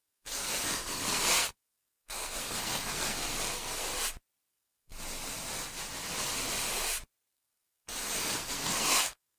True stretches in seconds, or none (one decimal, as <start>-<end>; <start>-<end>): 3.9-4.5; 4.9-7.3